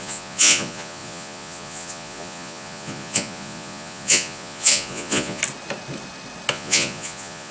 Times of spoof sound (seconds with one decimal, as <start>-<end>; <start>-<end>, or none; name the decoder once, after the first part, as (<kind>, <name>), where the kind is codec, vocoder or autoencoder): 0.0-5.4 (vocoder, Vocos); 6.5-7.5